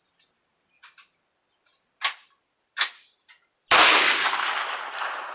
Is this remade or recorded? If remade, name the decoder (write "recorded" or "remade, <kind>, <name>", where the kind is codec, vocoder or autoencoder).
recorded